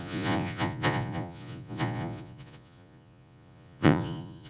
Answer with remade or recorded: remade